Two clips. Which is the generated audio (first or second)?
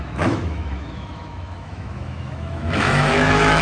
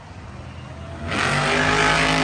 first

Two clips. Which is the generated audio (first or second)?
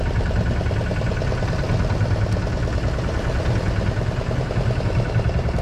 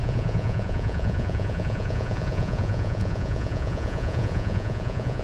second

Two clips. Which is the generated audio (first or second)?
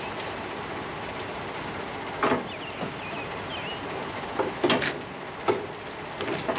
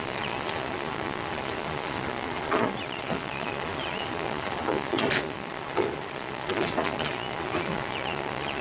second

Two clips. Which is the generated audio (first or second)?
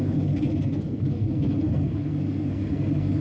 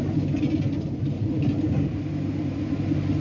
first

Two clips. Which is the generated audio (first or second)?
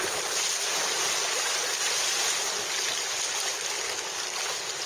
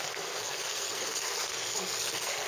second